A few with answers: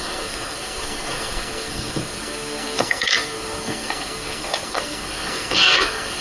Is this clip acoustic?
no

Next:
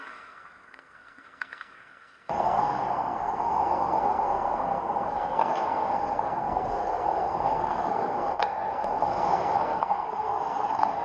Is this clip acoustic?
no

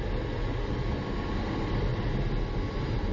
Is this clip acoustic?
yes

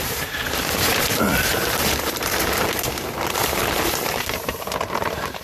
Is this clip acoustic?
no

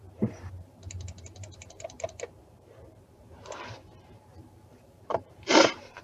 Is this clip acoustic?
no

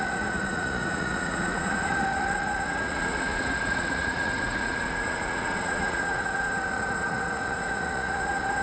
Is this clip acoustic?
no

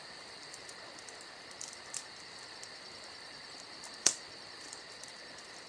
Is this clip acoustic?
no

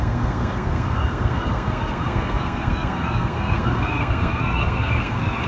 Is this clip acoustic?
no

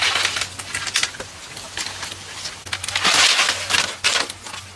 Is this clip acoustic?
yes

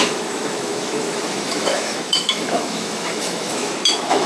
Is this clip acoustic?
no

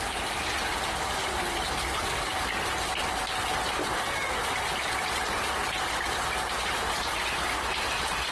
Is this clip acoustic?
yes